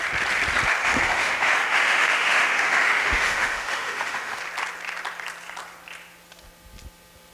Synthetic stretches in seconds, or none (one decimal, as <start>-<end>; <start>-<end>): 0.8-4.4